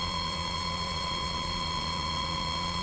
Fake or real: fake